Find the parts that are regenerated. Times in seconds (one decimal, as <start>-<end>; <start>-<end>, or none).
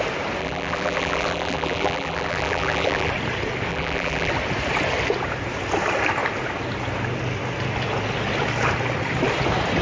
0.4-3.1; 3.7-4.3